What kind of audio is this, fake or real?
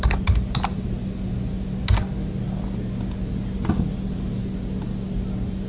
real